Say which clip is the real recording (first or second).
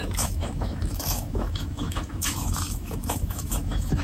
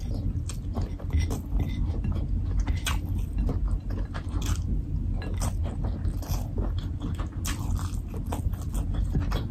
second